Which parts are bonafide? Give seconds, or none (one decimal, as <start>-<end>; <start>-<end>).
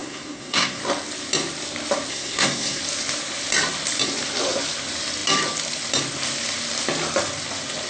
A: 0.8-2.1; 2.8-7.9